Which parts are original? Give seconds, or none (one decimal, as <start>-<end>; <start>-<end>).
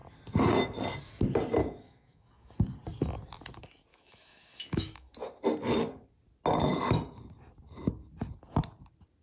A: 0.0-1.6; 2.5-3.9; 5.1-9.2